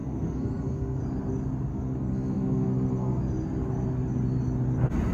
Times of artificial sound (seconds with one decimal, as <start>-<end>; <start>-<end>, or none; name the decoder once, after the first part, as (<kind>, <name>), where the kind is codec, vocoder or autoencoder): 0.0-1.0 (codec, SNAC); 1.7-3.2